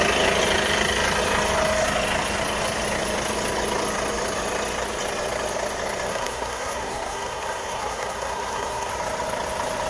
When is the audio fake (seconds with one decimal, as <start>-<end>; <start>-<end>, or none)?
6.1-8.9